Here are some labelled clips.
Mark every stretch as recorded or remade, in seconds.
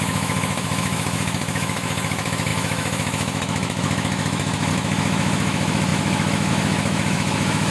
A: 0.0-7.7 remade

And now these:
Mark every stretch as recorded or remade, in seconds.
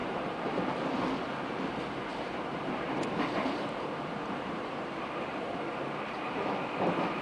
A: 0.0-0.8 remade; 0.8-2.1 recorded; 2.1-6.4 remade; 6.4-7.2 recorded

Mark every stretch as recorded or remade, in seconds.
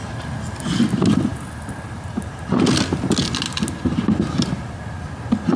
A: 0.0-5.6 recorded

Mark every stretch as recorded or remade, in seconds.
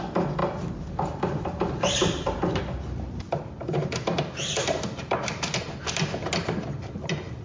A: 0.0-0.4 recorded; 0.4-2.6 remade; 2.6-3.6 recorded; 3.6-5.6 remade; 5.6-7.4 recorded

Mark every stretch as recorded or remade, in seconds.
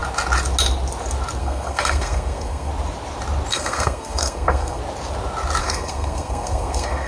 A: 0.0-1.4 recorded; 1.4-2.7 remade; 2.7-3.5 recorded; 3.5-4.8 remade; 4.8-5.6 recorded; 5.6-7.1 remade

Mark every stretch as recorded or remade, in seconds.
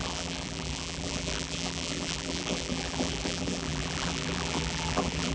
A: 0.0-5.3 remade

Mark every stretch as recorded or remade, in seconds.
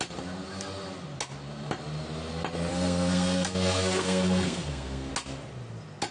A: 0.0-2.7 recorded; 2.7-5.1 remade; 5.1-6.1 recorded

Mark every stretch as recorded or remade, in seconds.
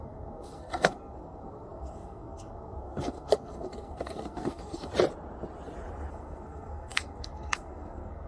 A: 0.0-4.9 remade; 4.9-6.1 recorded; 6.1-8.3 remade